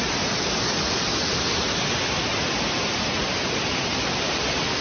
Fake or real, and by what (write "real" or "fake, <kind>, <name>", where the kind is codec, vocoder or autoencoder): real